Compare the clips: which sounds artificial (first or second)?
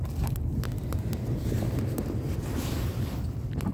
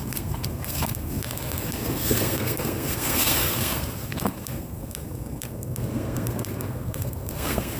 second